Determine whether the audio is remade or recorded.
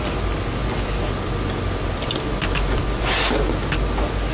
recorded